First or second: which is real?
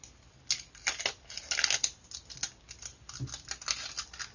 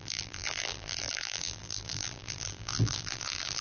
first